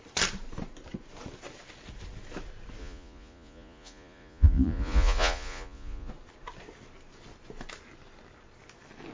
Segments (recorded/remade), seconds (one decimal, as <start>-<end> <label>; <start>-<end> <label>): 0.0-2.8 recorded; 2.8-6.1 remade; 6.1-9.1 recorded

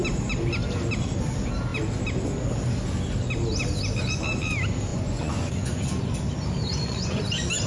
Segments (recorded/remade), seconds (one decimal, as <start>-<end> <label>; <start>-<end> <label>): 0.0-4.9 recorded; 4.9-6.1 remade; 6.1-6.7 recorded; 6.7-7.2 remade; 7.2-7.7 recorded

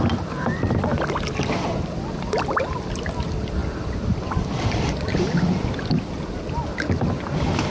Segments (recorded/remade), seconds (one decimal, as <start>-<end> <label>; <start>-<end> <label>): 0.0-7.7 recorded

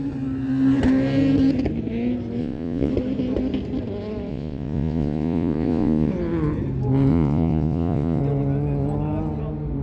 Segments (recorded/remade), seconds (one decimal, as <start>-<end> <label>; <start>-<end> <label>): 0.0-2.4 recorded; 2.4-2.9 remade; 2.9-4.3 recorded; 4.3-6.1 remade; 6.1-7.1 recorded; 7.1-8.2 remade; 8.2-9.8 recorded